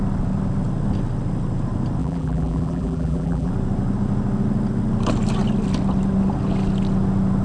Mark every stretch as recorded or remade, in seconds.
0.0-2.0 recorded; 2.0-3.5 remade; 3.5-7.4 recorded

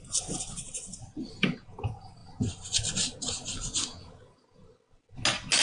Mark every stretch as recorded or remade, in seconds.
0.0-5.6 recorded

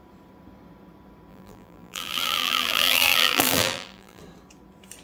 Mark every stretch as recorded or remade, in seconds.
0.0-1.3 recorded; 1.3-4.2 remade; 4.2-5.0 recorded

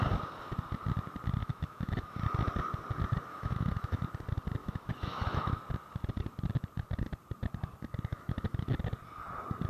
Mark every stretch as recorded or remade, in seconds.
0.0-1.4 recorded; 1.4-2.2 remade; 2.2-3.3 recorded; 3.3-4.0 remade; 4.0-4.6 recorded; 4.6-5.6 remade; 5.6-8.1 recorded; 8.1-8.7 remade; 8.7-9.7 recorded

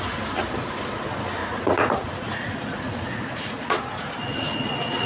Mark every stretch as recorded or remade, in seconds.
0.0-1.4 recorded; 1.4-4.0 remade; 4.0-5.1 recorded

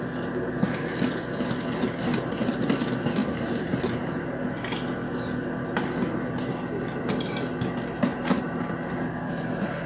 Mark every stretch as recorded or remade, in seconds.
0.0-3.2 recorded; 3.2-4.1 remade; 4.1-8.1 recorded; 8.1-9.2 remade; 9.2-9.9 recorded